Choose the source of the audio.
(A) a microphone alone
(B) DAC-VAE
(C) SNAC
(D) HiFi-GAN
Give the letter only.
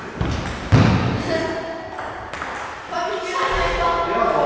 A